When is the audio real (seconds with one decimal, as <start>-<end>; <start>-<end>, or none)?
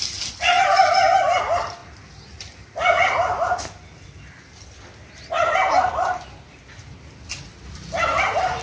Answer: 0.0-8.6